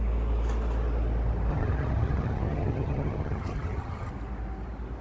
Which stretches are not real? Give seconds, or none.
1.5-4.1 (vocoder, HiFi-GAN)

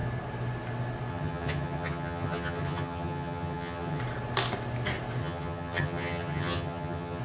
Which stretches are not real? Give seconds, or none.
1.1-4.0 (vocoder, HiFi-GAN); 5.2-7.2

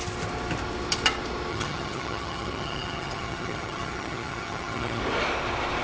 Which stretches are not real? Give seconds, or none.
1.5-5.0 (vocoder, HiFi-GAN)

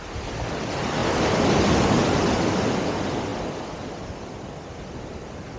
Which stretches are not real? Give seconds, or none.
none

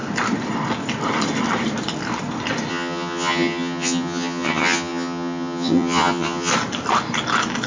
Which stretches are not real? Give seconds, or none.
2.7-6.5 (vocoder, HiFi-GAN)